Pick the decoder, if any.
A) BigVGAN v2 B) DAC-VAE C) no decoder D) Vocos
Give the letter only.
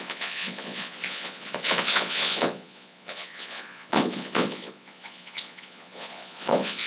D